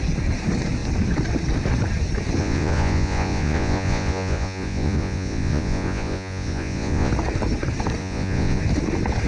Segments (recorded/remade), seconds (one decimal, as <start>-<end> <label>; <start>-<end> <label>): 0.0-2.4 recorded; 2.4-7.1 remade; 7.1-8.0 recorded; 8.0-8.6 remade; 8.6-9.3 recorded